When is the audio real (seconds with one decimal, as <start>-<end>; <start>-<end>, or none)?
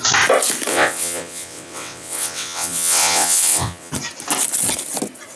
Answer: 0.0-0.7; 3.9-5.4